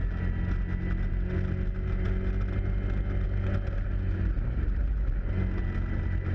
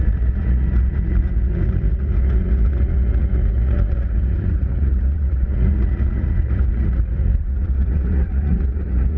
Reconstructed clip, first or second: second